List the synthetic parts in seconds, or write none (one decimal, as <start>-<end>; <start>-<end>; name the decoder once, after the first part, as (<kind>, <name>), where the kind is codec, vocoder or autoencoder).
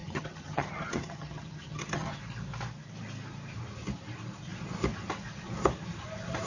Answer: 0.0-2.2 (vocoder, HiFi-GAN)